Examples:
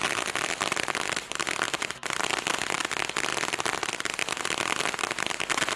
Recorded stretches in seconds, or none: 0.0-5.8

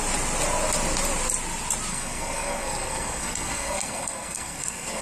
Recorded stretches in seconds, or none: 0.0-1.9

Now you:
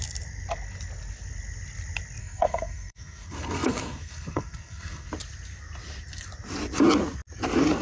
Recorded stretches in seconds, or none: 0.0-2.2; 5.1-7.8

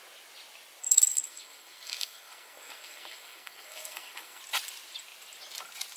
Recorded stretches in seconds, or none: 0.0-0.8; 4.4-6.0

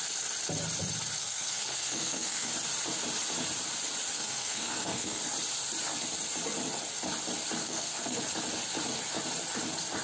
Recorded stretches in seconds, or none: 0.0-1.2; 2.5-4.1; 5.2-7.6; 8.2-10.0

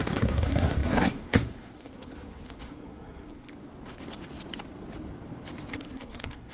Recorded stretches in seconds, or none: 3.5-5.7